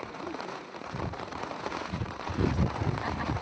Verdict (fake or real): fake